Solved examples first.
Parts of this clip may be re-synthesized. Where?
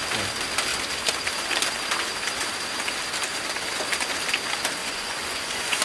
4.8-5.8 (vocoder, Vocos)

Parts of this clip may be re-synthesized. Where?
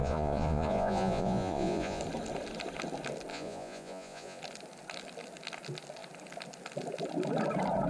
0.0-2.0 (vocoder, Vocos); 3.3-4.4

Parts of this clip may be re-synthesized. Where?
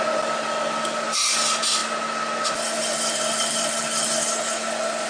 none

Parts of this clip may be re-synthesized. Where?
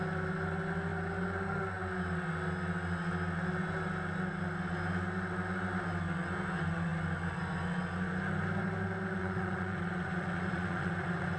9.2-11.4 (vocoder, Vocos)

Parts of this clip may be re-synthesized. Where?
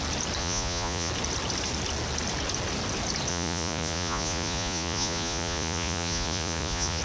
0.4-1.1 (vocoder, Vocos); 3.3-7.0